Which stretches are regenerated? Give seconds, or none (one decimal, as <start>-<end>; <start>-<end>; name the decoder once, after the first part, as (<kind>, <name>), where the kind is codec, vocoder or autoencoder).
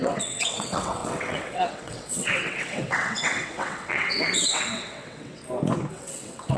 0.0-5.4 (vocoder, WaveNeXt); 5.9-6.6